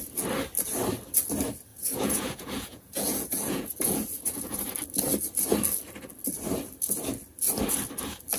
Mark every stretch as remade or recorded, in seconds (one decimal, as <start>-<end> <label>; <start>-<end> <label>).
0.0-1.7 recorded; 1.7-4.7 remade; 4.7-8.4 recorded